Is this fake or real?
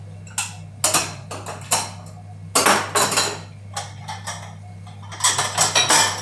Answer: real